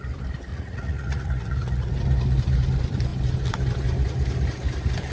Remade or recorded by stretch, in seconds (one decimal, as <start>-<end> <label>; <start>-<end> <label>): 0.0-0.5 recorded; 0.5-1.9 remade; 1.9-5.1 recorded